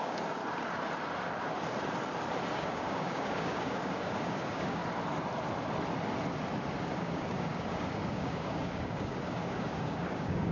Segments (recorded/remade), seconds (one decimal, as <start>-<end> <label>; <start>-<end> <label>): 0.0-0.4 remade; 0.4-2.5 recorded; 2.5-4.8 remade; 4.8-6.9 recorded; 6.9-10.5 remade